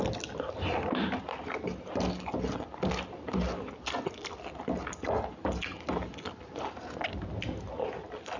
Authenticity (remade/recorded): recorded